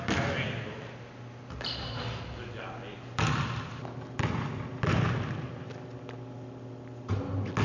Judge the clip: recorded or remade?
recorded